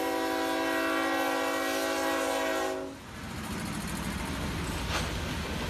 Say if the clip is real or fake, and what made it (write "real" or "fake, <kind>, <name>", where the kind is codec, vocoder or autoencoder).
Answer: real